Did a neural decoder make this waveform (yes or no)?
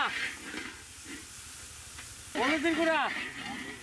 no